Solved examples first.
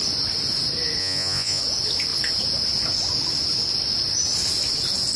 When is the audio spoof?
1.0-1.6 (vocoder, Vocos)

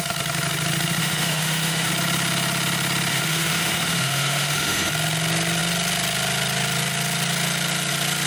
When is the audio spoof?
1.0-1.9 (autoencoder, DAC-VAE); 3.1-4.9

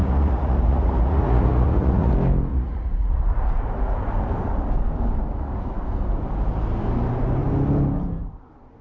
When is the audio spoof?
0.0-2.1 (vocoder, Vocos); 2.5-3.1

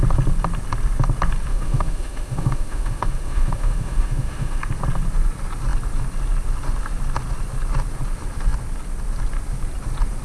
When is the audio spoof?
1.5-4.6 (autoencoder, DAC-VAE)

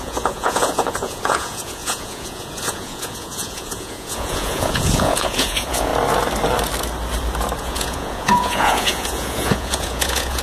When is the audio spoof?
0.0-5.9 (vocoder, Vocos); 7.6-10.4

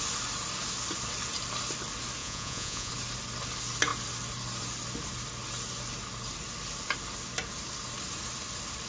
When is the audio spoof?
2.2-2.9 (vocoder, Vocos)

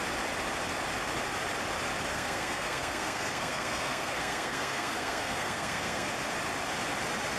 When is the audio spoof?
2.1-6.1 (codec, SNAC)

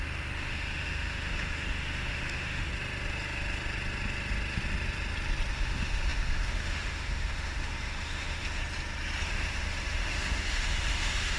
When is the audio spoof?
0.0-2.7 (autoencoder, DAC-VAE); 5.5-8.6; 9.2-11.4